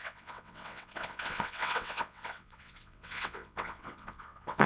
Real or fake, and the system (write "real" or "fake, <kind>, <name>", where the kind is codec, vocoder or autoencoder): fake, vocoder, WaveNeXt